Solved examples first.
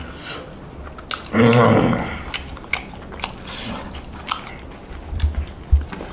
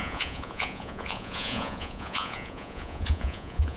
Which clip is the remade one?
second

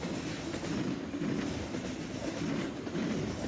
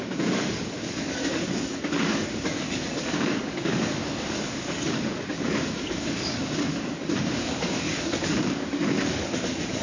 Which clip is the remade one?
second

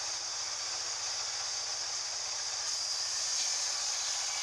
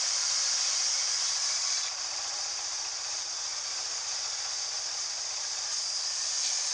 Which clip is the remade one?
second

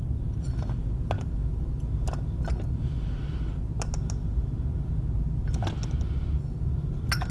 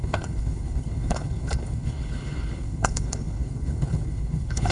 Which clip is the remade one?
second